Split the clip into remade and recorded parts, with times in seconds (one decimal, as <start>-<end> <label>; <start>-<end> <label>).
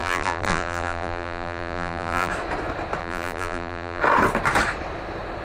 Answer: 0.0-2.3 remade; 2.3-3.0 recorded; 3.0-4.0 remade; 4.0-5.4 recorded